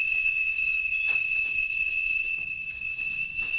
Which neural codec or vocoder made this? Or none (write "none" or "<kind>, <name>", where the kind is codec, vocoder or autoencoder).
vocoder, WaveNeXt